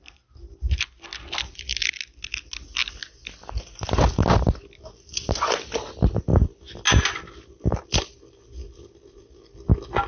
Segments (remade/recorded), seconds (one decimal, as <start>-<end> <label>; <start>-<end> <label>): 0.0-1.2 recorded; 1.2-1.8 remade; 1.8-6.3 recorded; 6.3-6.8 remade; 6.8-10.1 recorded